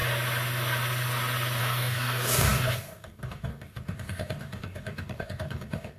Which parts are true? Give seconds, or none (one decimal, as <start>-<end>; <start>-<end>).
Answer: 0.0-1.6

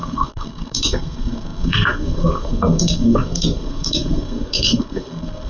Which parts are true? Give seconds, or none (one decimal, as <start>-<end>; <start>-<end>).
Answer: none

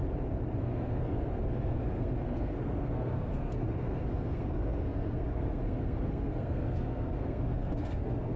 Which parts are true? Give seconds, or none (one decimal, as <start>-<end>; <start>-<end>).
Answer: 0.0-0.6

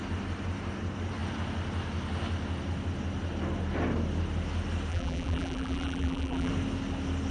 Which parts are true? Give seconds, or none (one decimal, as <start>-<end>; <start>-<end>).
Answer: 0.0-4.9; 6.5-7.3

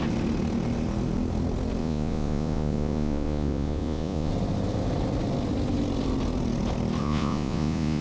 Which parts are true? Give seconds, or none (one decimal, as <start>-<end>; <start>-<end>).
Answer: 0.0-1.8; 4.3-7.0

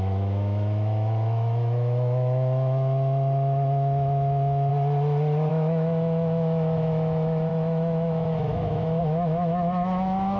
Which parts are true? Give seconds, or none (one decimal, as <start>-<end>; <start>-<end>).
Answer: 4.7-5.5

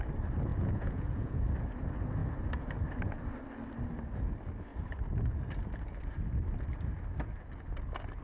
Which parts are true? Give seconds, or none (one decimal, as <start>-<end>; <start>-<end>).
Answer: 0.0-0.5; 1.4-8.2

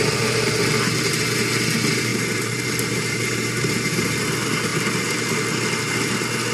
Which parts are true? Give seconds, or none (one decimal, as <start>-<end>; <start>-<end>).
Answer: 0.0-2.1; 4.1-6.5